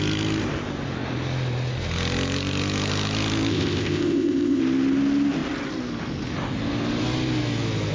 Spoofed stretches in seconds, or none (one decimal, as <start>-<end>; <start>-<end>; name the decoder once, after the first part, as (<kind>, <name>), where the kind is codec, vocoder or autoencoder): 3.5-4.6 (codec, ZipCodec)